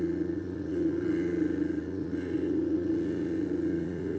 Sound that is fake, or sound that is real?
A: fake